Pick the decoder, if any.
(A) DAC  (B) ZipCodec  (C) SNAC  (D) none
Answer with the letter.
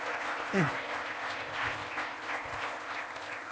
B